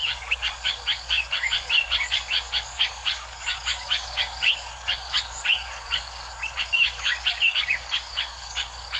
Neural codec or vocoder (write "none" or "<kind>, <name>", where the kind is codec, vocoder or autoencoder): codec, DAC